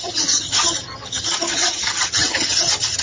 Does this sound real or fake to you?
fake